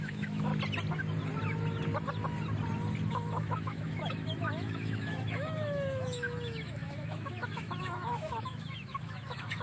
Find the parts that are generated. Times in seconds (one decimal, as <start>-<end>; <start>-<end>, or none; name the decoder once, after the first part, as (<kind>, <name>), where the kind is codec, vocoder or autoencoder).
0.0-0.5 (autoencoder, DAC-VAE); 3.1-9.6